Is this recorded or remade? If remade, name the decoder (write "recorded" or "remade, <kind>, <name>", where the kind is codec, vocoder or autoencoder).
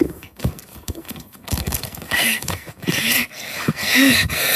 remade, codec, SNAC